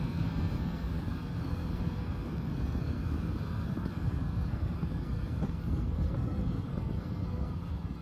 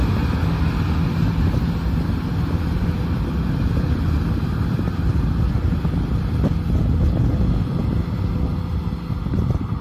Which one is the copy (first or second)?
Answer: first